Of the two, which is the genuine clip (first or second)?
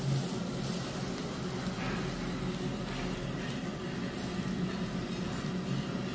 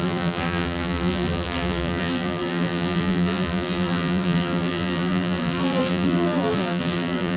first